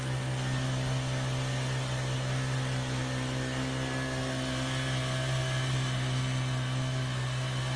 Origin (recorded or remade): recorded